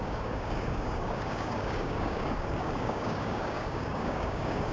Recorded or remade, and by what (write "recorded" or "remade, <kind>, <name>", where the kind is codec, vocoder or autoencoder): remade, codec, DAC